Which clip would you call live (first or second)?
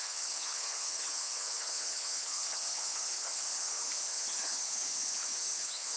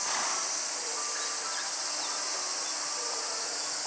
second